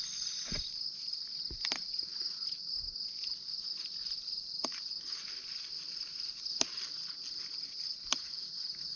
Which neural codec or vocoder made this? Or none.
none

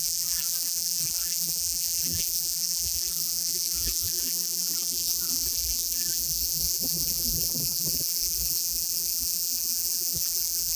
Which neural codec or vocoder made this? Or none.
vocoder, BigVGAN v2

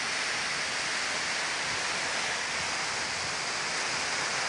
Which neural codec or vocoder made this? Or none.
none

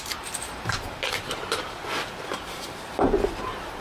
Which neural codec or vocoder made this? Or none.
vocoder, BigVGAN v2